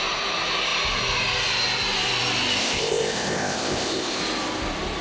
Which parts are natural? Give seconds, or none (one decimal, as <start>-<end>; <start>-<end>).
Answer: 0.0-2.6; 4.2-5.0